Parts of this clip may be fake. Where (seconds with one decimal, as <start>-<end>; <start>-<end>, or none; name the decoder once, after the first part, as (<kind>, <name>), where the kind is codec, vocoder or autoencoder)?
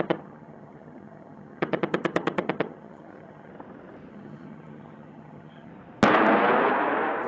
0.0-3.5 (vocoder, HiFi-GAN); 4.1-5.7